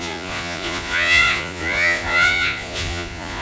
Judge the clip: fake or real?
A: fake